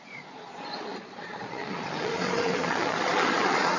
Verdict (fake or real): fake